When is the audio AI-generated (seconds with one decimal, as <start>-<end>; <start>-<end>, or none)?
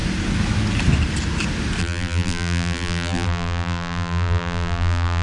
1.8-5.2